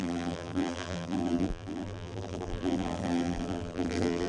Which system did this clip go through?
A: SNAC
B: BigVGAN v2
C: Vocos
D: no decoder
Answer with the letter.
B